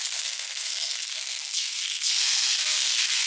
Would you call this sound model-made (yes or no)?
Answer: yes